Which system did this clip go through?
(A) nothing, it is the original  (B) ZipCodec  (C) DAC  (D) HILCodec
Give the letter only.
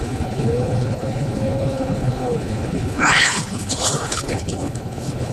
D